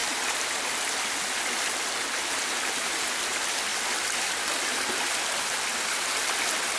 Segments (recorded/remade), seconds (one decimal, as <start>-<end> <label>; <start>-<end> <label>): 0.0-6.8 recorded